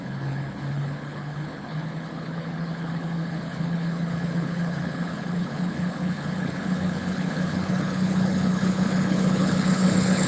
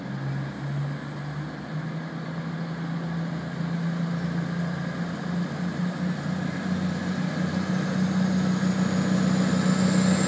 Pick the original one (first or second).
second